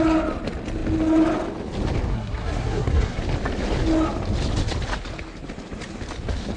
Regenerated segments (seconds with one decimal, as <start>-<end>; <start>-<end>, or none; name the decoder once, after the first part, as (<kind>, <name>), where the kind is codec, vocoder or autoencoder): 2.1-3.2 (codec, SNAC)